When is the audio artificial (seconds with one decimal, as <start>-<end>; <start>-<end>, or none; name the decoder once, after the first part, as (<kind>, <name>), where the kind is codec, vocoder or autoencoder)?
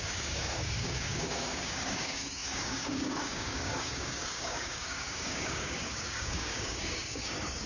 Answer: 0.0-7.7 (codec, DAC)